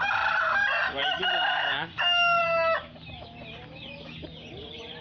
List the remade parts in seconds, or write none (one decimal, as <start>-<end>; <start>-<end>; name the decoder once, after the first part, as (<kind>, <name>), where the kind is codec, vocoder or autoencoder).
none